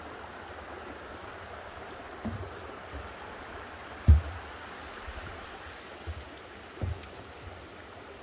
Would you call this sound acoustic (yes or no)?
yes